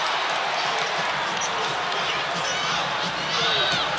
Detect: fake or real fake